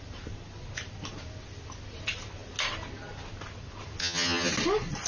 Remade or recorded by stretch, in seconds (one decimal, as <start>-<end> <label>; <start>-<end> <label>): 0.0-4.0 recorded; 4.0-4.5 remade; 4.5-5.1 recorded